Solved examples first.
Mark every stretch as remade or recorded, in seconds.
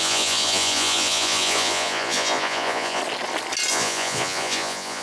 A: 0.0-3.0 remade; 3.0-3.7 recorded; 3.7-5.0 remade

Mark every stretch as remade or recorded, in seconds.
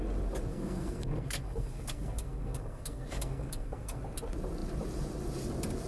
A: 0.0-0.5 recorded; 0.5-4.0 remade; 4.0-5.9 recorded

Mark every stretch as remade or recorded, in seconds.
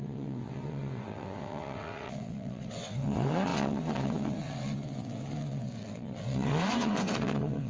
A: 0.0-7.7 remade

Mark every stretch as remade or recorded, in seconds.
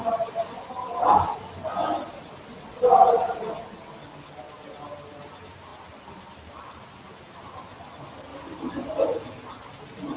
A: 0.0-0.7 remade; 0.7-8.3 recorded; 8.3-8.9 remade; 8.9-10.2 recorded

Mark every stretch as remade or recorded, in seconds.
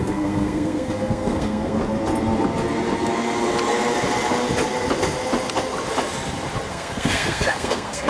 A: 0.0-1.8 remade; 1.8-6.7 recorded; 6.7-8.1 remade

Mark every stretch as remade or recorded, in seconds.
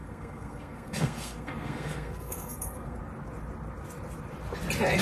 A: 0.0-3.0 remade; 3.0-5.0 recorded